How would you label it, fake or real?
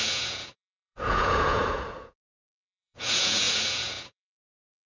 fake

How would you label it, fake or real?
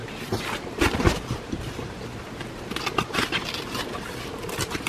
fake